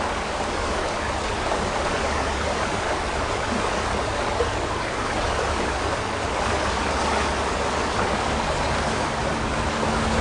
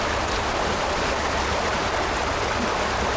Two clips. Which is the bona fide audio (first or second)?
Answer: second